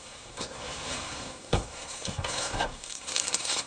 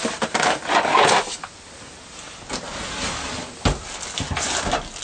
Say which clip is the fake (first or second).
first